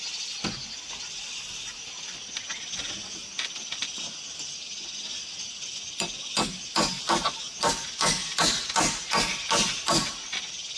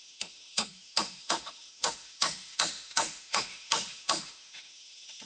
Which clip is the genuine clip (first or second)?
first